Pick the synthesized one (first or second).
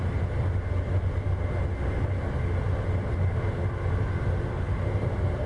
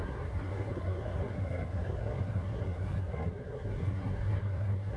second